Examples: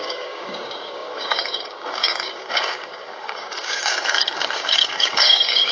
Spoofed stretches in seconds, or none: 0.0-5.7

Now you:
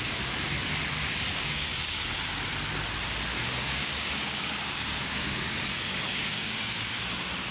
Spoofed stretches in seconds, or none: 1.3-2.1; 3.3-6.9

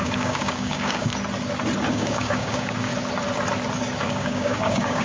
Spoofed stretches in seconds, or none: 0.0-1.1; 1.9-2.9; 4.0-5.0